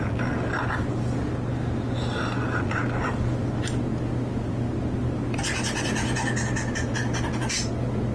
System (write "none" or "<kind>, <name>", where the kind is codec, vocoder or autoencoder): none